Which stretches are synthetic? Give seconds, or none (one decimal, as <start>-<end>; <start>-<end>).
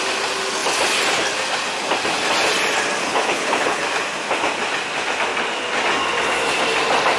3.0-3.8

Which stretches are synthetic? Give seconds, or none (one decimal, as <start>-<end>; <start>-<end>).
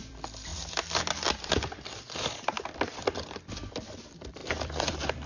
0.0-5.3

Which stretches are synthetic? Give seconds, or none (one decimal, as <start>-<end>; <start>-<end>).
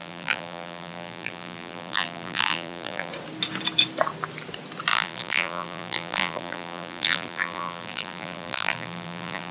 0.0-3.1; 4.9-9.5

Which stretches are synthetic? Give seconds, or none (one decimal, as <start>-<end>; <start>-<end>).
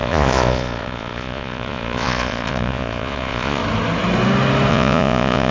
0.0-3.6; 4.7-5.5